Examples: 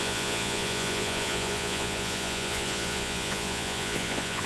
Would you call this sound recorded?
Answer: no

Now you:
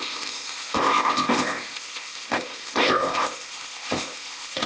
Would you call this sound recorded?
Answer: no